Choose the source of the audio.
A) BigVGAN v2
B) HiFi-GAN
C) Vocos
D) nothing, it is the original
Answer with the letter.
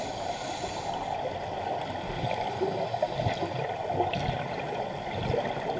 D